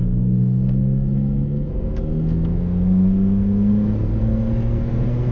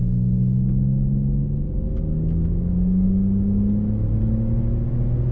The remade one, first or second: first